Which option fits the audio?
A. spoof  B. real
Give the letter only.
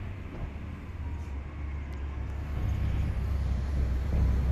B